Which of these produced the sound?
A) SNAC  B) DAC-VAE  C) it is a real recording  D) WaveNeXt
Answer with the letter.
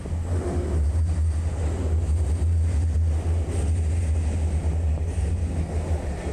C